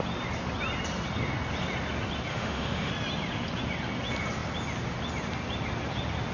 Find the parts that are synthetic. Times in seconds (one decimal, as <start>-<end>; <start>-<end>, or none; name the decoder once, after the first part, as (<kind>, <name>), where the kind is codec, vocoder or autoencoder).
2.3-2.9 (autoencoder, DAC-VAE)